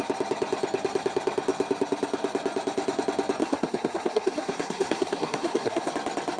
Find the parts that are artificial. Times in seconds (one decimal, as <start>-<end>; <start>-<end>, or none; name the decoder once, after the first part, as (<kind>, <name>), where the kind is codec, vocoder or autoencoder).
3.4-5.9 (codec, SNAC)